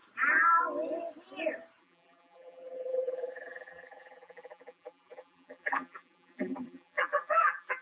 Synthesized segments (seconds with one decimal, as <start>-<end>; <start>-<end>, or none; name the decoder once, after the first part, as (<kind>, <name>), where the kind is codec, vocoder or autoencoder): 1.8-7.8 (vocoder, BigVGAN v2)